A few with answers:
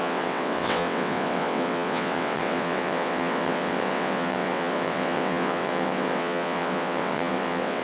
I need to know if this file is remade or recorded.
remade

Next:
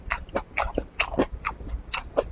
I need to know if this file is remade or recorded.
recorded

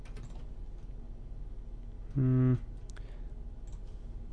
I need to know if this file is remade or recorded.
recorded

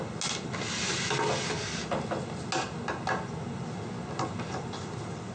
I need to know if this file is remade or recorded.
recorded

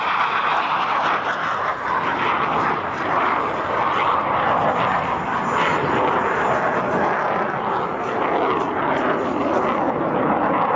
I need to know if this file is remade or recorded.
recorded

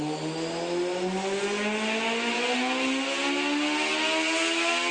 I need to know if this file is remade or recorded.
recorded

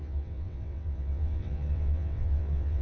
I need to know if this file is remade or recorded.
remade